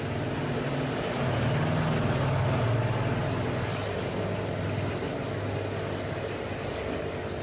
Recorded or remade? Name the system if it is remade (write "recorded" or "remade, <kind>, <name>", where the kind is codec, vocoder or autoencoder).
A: recorded